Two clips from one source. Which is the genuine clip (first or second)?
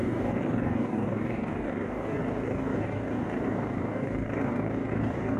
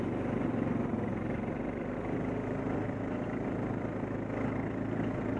second